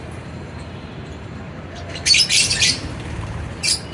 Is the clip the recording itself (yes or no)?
no